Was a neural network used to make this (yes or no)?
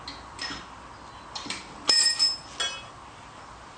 no